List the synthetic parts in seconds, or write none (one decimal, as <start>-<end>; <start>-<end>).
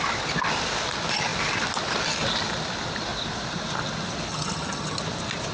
4.3-5.0